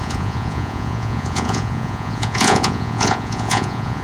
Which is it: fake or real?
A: fake